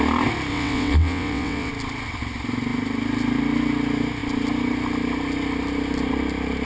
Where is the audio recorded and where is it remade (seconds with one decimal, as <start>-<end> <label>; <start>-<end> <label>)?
0.0-0.5 recorded; 0.5-1.7 remade; 1.7-6.6 recorded